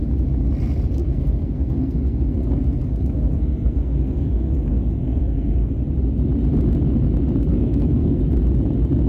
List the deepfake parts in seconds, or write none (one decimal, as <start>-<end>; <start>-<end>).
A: 1.0-5.7; 7.5-8.2